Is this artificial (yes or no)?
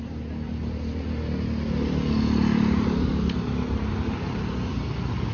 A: no